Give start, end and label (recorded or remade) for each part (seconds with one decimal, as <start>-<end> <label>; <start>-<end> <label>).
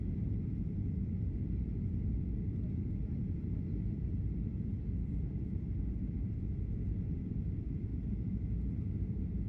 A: 0.0-7.9 remade; 7.9-8.8 recorded; 8.8-9.5 remade